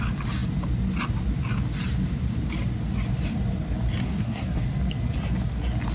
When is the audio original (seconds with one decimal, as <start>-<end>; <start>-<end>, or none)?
0.0-4.0; 4.6-5.9